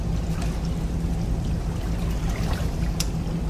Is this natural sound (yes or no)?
yes